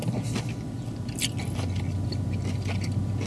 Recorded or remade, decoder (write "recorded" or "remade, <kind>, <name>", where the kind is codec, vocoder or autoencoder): recorded